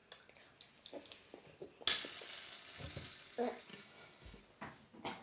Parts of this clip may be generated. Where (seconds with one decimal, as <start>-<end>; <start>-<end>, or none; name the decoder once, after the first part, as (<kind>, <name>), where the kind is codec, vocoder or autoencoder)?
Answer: 3.7-4.4 (autoencoder, DAC-VAE)